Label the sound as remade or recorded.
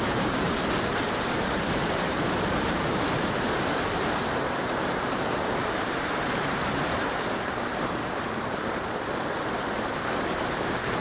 remade